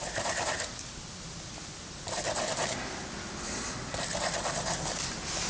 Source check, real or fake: real